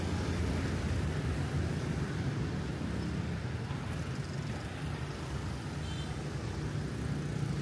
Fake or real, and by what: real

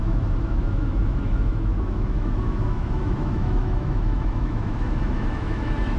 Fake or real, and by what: fake, autoencoder, DAC-VAE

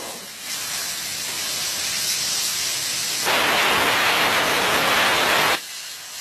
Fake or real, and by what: real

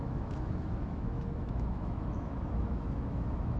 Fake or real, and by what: fake, autoencoder, DAC-VAE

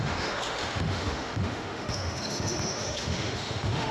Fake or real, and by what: fake, autoencoder, DAC-VAE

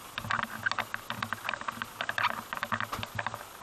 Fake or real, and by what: real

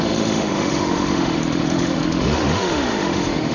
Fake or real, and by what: fake, autoencoder, DAC-VAE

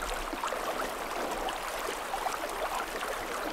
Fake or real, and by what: real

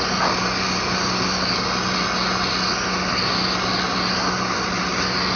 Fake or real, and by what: real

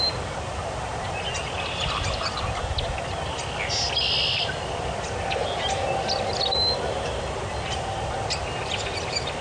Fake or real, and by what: real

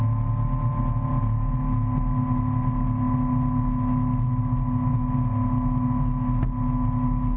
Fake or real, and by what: real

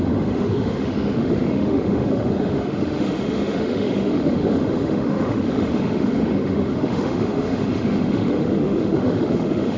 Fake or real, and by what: fake, autoencoder, DAC-VAE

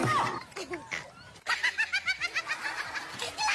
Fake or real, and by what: real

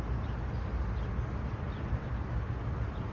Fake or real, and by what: real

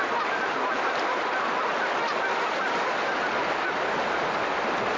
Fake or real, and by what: real